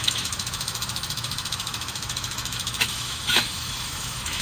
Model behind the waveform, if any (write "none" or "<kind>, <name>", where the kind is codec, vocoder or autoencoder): autoencoder, DAC-VAE